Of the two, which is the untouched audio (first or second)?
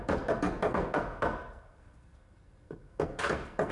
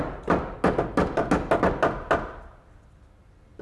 second